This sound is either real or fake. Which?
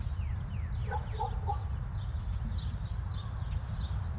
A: real